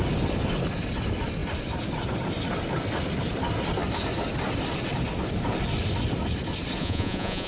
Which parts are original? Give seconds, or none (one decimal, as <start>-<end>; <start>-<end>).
0.0-6.8